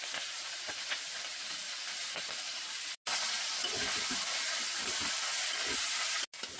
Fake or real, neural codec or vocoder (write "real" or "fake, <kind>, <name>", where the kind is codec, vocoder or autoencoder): real